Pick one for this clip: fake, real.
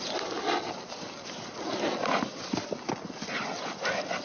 real